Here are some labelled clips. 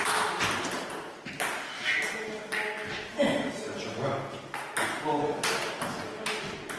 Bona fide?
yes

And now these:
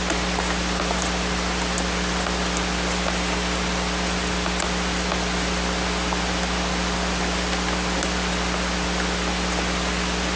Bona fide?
yes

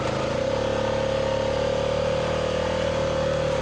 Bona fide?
yes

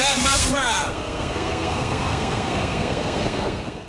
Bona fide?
no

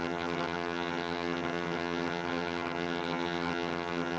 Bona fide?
no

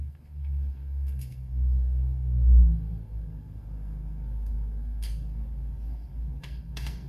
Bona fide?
no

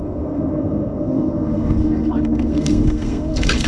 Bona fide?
no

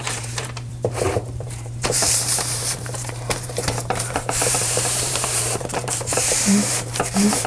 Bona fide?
no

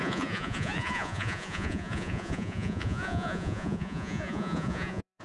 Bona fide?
no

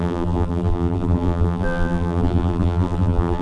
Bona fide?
no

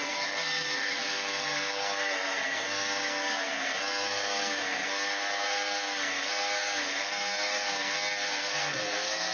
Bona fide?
no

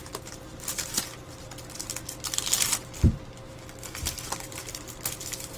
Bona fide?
yes